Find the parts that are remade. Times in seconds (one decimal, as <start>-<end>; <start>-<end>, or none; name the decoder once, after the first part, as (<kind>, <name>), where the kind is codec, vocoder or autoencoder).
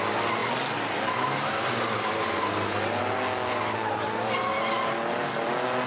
none